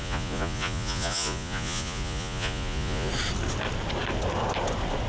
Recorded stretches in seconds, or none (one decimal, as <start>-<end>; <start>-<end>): 3.1-5.1